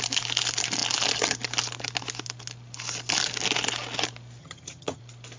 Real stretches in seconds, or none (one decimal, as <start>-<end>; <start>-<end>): 0.0-4.4; 5.0-5.4